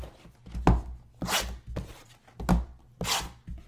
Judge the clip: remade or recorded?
recorded